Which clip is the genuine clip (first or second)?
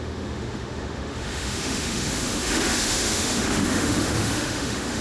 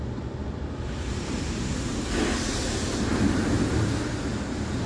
second